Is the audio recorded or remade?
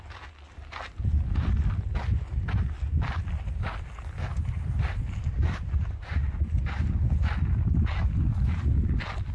recorded